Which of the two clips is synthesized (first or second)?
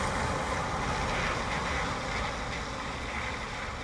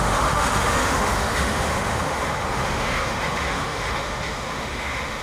second